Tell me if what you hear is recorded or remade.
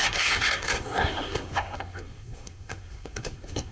remade